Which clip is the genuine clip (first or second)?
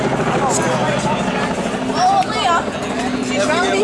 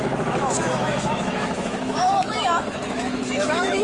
first